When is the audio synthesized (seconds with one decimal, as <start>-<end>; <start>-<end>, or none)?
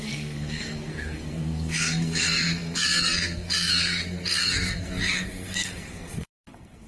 0.0-6.9